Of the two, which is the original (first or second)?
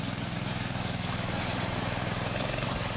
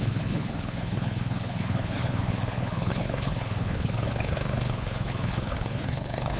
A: first